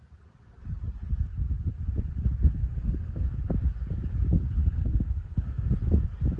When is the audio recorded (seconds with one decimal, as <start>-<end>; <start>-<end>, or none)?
0.0-2.6; 3.3-4.6; 5.7-6.4